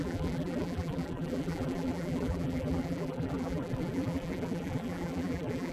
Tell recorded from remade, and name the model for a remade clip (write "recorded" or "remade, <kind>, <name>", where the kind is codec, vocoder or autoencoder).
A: remade, vocoder, BigVGAN v2